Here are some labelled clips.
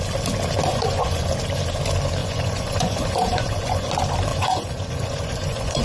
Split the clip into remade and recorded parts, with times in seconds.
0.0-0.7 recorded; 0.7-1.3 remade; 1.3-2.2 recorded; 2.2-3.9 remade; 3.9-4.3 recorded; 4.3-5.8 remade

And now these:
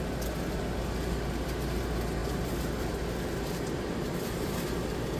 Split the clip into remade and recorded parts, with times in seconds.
0.0-5.2 recorded

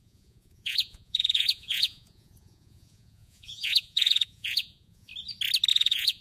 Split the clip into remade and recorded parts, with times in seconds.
0.0-5.1 remade; 5.1-5.7 recorded; 5.7-6.2 remade

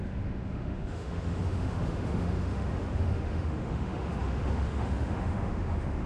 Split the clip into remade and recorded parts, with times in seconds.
0.0-6.1 remade

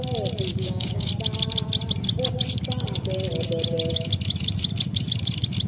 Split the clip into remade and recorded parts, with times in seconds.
0.0-0.5 recorded; 0.5-1.1 remade; 1.1-5.7 recorded